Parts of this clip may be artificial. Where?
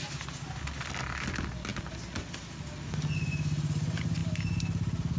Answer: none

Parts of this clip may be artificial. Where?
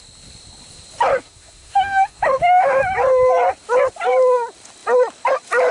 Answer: 1.1-2.8